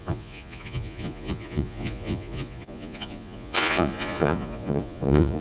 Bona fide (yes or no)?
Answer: no